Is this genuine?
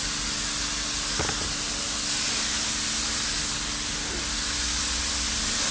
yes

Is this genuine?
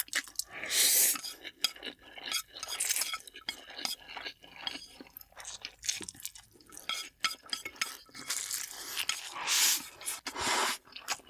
yes